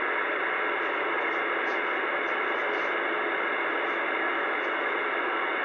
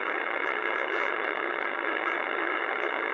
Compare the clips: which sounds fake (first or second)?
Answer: second